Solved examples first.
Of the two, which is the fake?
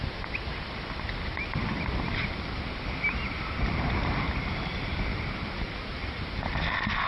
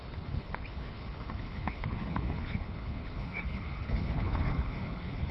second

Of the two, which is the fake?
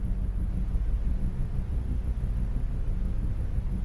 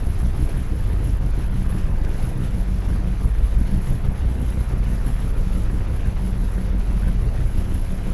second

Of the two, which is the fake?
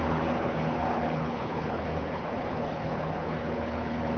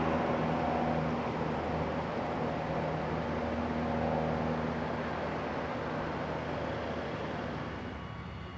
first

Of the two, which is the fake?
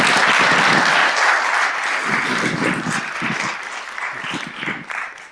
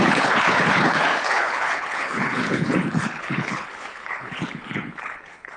second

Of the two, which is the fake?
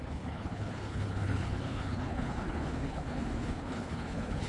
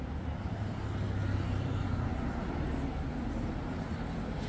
first